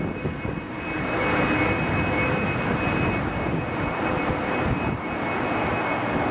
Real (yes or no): yes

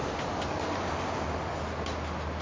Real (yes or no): yes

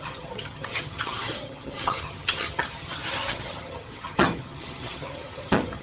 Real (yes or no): no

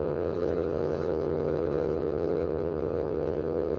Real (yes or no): no